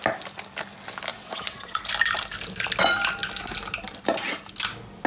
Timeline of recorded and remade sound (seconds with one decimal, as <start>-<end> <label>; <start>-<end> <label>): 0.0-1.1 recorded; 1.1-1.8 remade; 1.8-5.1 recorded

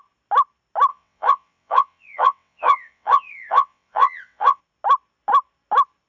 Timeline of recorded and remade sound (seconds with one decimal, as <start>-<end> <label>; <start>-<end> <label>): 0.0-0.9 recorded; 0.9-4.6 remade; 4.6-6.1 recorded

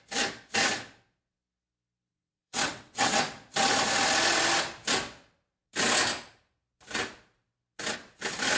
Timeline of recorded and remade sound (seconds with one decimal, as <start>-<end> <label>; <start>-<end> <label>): 0.0-2.1 recorded; 2.1-3.2 remade; 3.2-8.6 recorded